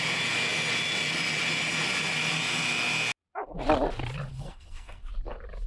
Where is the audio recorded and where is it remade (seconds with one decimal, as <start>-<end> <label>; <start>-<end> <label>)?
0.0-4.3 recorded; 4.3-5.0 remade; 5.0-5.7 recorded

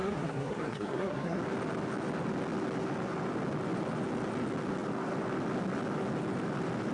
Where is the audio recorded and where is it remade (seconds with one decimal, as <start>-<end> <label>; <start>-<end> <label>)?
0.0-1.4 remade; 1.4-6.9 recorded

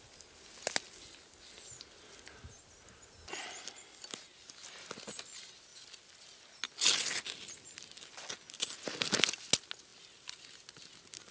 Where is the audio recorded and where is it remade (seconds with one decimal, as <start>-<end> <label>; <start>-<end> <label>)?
0.0-11.3 recorded

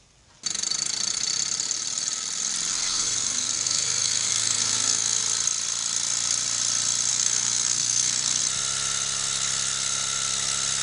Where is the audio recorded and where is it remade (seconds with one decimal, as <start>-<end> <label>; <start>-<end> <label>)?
0.0-2.7 recorded; 2.7-5.2 remade; 5.2-7.1 recorded; 7.1-8.4 remade; 8.4-10.8 recorded

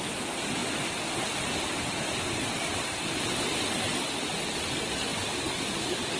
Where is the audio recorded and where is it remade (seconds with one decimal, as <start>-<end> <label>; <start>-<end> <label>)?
0.0-6.2 recorded